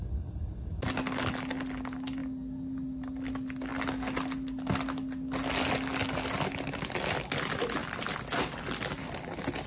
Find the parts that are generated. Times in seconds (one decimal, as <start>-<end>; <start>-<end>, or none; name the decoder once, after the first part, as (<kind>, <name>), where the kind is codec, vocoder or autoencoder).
none